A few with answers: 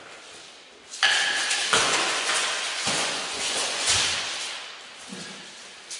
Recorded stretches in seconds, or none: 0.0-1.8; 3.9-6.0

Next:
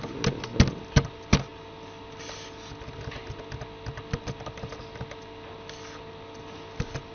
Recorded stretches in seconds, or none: 0.0-7.1

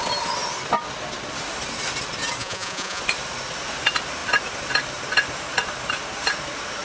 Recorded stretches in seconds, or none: 0.0-2.4; 3.0-6.8